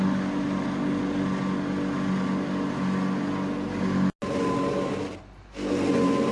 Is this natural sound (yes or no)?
yes